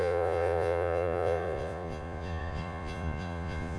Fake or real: fake